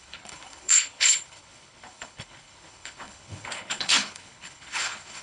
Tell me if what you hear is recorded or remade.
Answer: remade